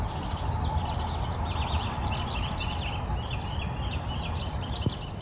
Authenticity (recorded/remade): recorded